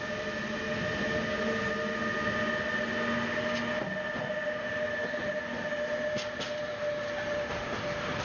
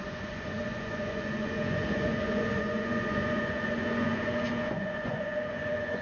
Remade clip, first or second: second